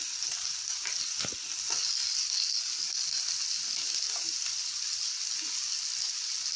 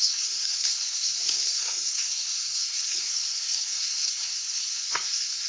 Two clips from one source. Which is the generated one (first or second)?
second